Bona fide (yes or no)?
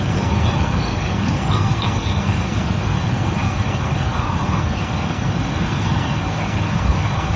no